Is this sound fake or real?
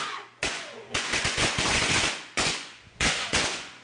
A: fake